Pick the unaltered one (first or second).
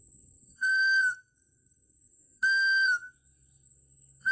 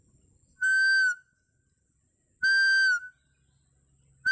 second